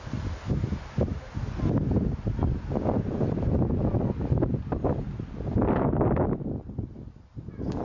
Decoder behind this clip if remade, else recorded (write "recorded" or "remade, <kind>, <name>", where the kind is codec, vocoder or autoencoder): recorded